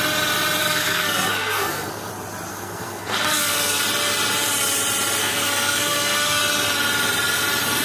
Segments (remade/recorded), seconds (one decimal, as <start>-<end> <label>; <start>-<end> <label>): 0.0-0.6 recorded; 0.6-2.1 remade; 2.1-2.5 recorded; 2.5-3.8 remade; 3.8-5.2 recorded; 5.2-6.4 remade; 6.4-7.8 recorded